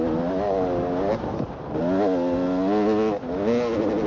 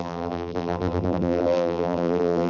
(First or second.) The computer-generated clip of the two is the second